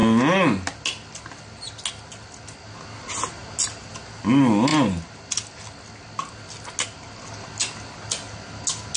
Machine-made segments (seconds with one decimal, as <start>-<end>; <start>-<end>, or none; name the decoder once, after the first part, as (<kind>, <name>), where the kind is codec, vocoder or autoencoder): none